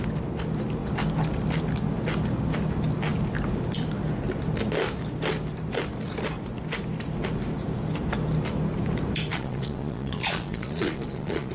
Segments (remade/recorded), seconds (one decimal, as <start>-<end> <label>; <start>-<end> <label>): 0.0-9.3 recorded; 9.3-11.5 remade

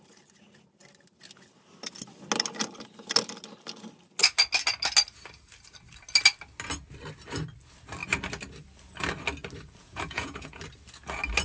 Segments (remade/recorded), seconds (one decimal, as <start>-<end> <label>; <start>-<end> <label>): 0.0-9.8 recorded; 9.8-10.6 remade; 10.6-11.4 recorded

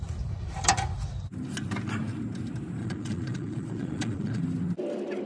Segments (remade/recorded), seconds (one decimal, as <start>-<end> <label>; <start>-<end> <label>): 0.0-2.8 recorded; 2.8-4.4 remade; 4.4-5.3 recorded

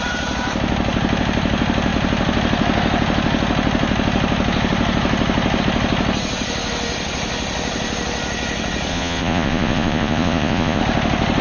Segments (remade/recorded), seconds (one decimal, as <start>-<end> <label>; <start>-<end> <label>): 0.0-8.9 recorded; 8.9-10.8 remade; 10.8-11.4 recorded

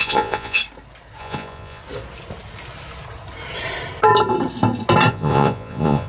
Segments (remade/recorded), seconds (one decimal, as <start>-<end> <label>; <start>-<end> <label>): 0.0-0.6 remade; 0.6-1.2 recorded; 1.2-1.8 remade; 1.8-5.1 recorded; 5.1-6.1 remade

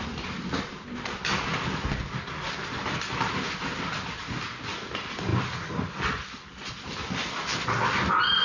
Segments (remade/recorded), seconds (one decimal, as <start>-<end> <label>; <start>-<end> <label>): 0.0-8.4 recorded